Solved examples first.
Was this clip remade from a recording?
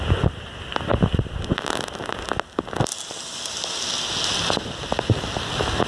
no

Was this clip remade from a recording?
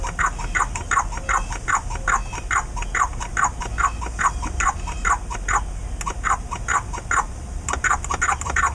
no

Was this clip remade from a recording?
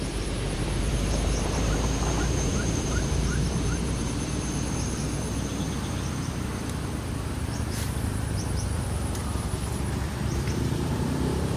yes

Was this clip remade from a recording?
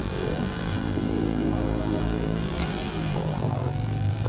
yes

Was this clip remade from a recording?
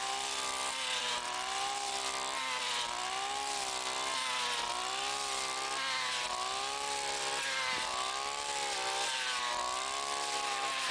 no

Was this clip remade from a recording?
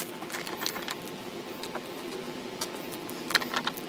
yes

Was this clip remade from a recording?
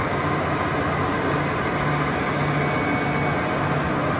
no